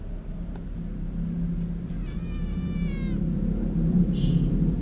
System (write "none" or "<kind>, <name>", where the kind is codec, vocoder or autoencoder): none